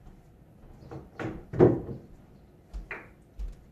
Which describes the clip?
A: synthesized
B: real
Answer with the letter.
B